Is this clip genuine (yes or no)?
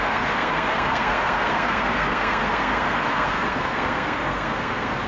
no